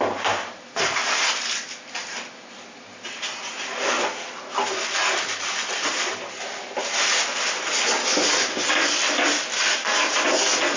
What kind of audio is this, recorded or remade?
recorded